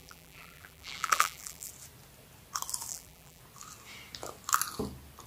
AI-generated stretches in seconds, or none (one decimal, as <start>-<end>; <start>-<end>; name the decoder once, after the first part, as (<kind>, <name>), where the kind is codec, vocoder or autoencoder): 0.0-1.7 (vocoder, BigVGAN v2); 2.9-3.4